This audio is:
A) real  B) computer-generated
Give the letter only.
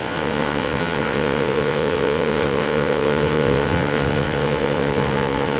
B